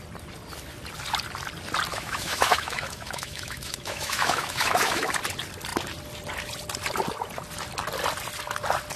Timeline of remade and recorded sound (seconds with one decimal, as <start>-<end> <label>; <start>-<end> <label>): 0.0-1.9 recorded; 1.9-5.1 remade; 5.1-9.0 recorded